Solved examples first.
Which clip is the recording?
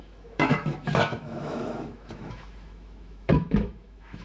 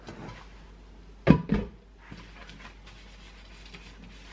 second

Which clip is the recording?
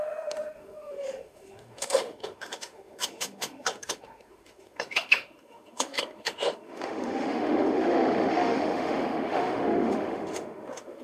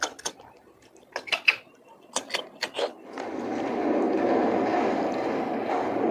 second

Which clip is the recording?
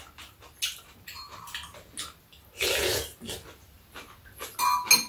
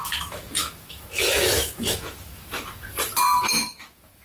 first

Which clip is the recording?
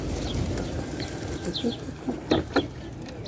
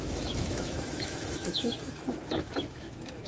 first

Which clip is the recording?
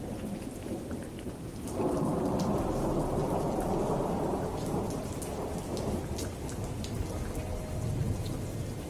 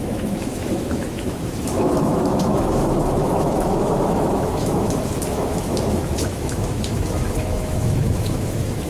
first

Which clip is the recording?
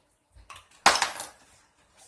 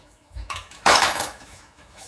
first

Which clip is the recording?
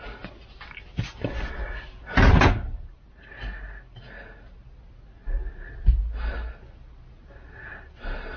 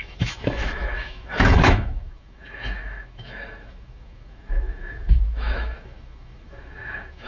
first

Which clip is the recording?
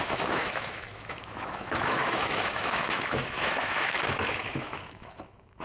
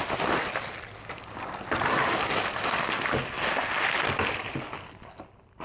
second